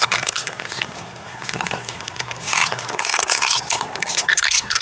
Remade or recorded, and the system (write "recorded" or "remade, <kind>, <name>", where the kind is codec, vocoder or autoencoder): remade, codec, SNAC